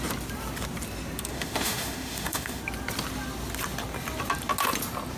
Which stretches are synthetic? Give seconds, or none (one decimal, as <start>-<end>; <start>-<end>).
1.3-2.6